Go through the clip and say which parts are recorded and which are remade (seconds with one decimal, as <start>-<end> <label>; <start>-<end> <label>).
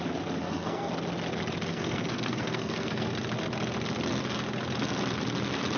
0.0-0.4 recorded; 0.4-0.9 remade; 0.9-1.7 recorded; 1.7-3.1 remade; 3.1-5.8 recorded